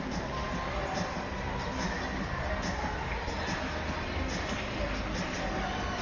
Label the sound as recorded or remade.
recorded